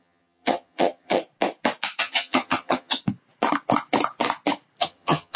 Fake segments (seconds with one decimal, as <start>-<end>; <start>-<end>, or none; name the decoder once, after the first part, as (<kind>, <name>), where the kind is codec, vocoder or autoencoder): 0.0-1.2 (vocoder, HiFi-GAN); 2.0-3.0; 4.8-5.4